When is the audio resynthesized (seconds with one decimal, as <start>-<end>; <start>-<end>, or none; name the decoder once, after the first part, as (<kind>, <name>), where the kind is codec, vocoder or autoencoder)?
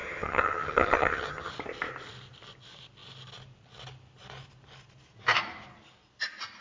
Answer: 0.0-1.5 (vocoder, HiFi-GAN)